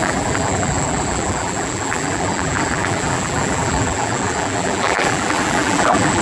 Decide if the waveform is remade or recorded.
remade